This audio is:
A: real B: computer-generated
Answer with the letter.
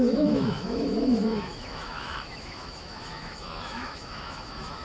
B